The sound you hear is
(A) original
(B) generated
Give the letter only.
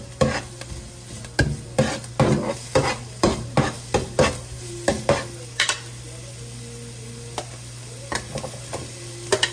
A